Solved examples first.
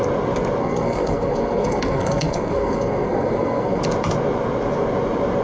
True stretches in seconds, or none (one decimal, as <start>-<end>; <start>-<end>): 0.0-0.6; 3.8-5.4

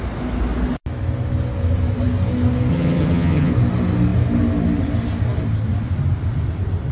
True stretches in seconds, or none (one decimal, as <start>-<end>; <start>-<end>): 0.0-2.7; 3.5-6.9

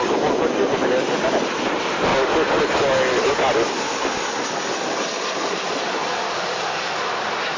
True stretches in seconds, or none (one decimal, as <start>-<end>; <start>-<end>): 0.0-7.6

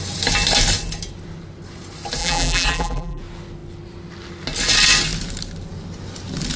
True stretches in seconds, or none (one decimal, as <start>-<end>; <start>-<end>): 0.0-2.2; 3.2-6.6

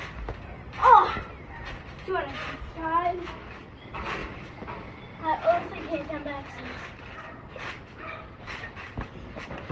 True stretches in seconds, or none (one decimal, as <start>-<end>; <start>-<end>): 0.0-4.2; 6.6-9.7

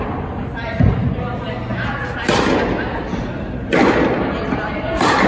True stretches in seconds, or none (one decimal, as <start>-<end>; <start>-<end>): 0.0-5.3

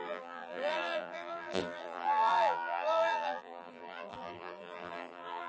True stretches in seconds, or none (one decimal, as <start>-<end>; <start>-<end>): none